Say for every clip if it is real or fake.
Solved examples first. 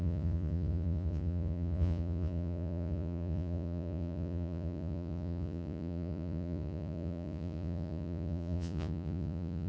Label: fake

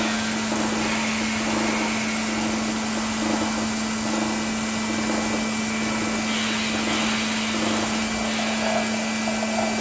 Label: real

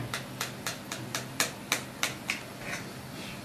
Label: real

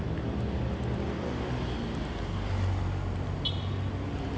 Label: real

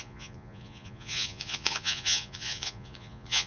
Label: fake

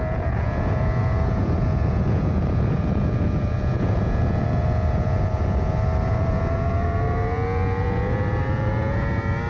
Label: fake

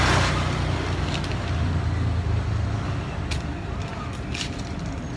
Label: real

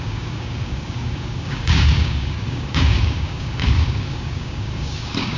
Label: fake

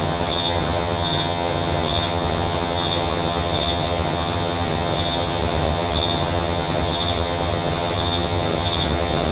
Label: fake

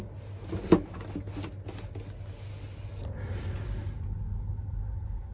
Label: real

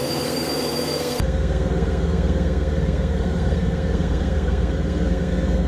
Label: fake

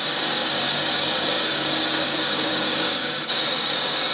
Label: fake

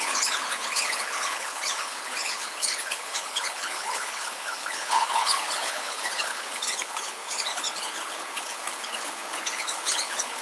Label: fake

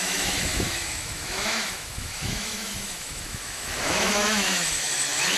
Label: fake